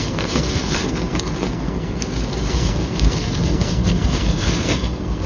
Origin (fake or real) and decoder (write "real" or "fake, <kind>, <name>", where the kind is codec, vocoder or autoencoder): fake, codec, SNAC